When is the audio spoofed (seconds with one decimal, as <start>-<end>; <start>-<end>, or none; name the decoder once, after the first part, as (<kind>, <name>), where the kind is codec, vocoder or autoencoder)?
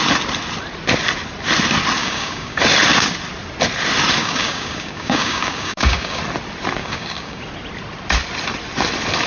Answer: 2.0-2.6 (codec, DAC); 4.2-6.2; 6.8-7.4